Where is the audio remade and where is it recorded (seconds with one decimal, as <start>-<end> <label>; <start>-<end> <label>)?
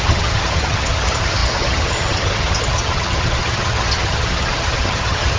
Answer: 0.0-5.4 remade